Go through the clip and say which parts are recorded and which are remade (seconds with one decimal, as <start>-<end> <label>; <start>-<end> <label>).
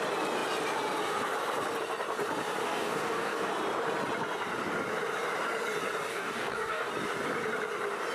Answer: 0.0-2.6 recorded; 2.6-3.5 remade; 3.5-6.1 recorded; 6.1-6.9 remade; 6.9-8.1 recorded